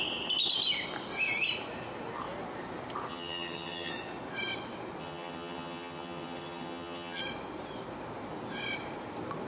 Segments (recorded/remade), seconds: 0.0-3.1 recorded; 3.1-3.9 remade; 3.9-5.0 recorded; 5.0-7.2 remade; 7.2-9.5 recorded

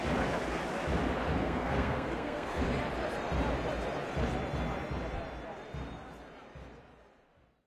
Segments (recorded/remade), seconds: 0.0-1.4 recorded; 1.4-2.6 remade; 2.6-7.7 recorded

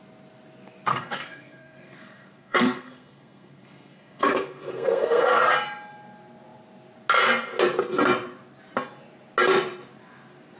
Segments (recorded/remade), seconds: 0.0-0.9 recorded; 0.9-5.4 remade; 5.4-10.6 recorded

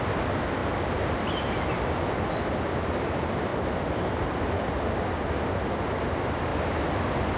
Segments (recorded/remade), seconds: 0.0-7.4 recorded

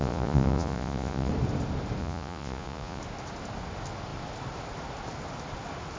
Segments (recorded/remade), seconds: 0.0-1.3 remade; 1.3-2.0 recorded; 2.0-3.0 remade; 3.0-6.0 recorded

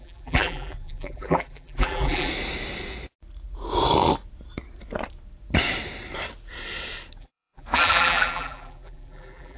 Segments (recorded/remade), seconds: 0.0-2.3 remade; 2.3-7.2 recorded; 7.2-9.6 remade